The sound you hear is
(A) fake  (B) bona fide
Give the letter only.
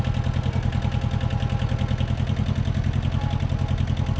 B